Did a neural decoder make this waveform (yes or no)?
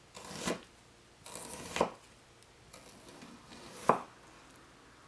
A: no